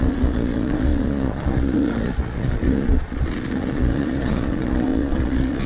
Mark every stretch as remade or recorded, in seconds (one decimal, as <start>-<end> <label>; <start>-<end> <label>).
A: 0.0-5.7 remade